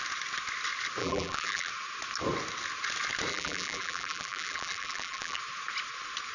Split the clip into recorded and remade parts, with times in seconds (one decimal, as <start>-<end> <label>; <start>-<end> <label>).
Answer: 0.0-1.0 recorded; 1.0-1.7 remade; 1.7-3.3 recorded; 3.3-5.4 remade; 5.4-6.3 recorded